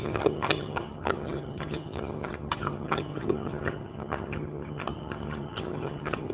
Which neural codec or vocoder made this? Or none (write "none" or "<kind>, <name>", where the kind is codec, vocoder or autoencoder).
vocoder, HiFi-GAN